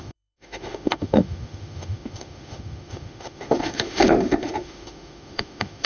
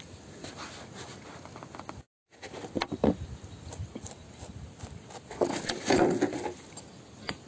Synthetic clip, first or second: first